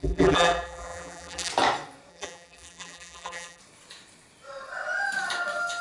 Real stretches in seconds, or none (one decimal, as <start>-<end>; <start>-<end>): 1.5-2.1; 3.6-5.8